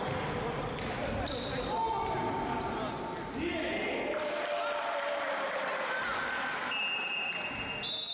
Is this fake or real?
real